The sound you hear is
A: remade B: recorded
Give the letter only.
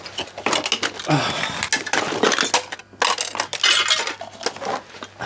B